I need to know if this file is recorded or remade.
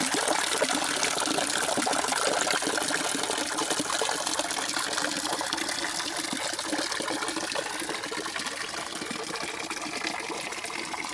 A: recorded